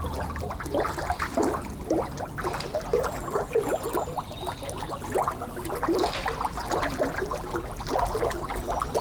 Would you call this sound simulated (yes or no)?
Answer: no